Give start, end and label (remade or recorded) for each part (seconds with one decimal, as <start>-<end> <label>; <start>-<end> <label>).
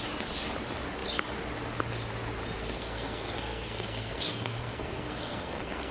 0.0-2.6 recorded; 2.6-5.9 remade